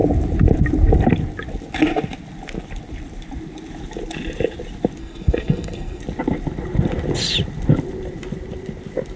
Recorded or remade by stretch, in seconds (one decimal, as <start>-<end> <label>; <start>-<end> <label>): 0.0-5.0 recorded; 5.0-6.0 remade; 6.0-9.2 recorded